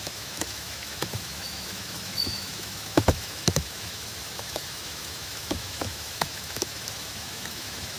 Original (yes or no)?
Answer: no